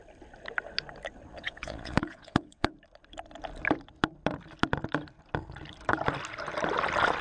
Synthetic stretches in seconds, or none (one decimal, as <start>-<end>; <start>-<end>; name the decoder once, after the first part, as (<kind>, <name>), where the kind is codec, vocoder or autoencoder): 1.3-2.7 (vocoder, WaveNeXt)